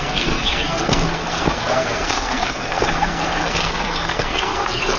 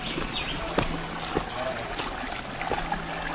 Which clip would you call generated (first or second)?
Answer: first